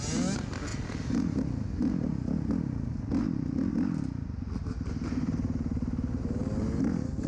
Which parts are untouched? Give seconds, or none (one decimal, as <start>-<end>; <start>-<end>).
0.0-4.6; 6.4-7.3